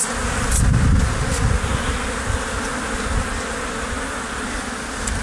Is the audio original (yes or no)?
yes